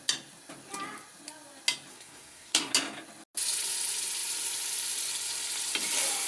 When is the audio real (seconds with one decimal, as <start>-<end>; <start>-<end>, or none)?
0.0-1.9; 2.7-6.3